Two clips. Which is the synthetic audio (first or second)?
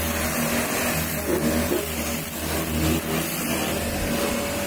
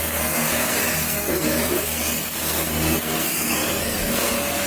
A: second